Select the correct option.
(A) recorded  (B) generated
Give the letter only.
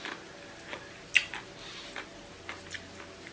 A